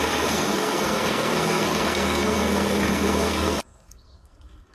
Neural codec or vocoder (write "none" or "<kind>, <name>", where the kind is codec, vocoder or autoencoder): codec, SNAC